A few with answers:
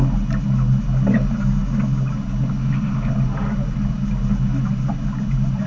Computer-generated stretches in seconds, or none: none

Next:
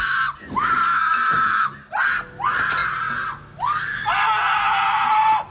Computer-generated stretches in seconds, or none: none

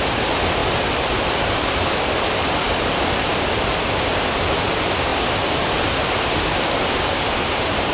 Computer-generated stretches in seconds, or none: 0.6-3.9 (vocoder, BigVGAN v2); 5.1-7.4

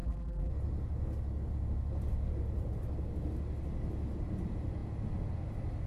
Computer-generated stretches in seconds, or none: 0.0-0.5 (vocoder, BigVGAN v2)

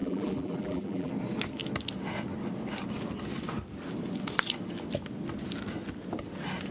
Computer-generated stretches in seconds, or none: 0.0-1.1 (vocoder, BigVGAN v2)

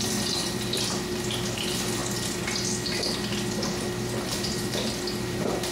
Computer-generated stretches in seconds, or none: 0.0-2.0 (vocoder, BigVGAN v2); 4.2-5.7

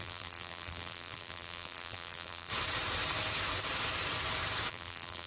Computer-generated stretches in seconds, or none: 0.0-2.5 (vocoder, BigVGAN v2); 4.7-5.3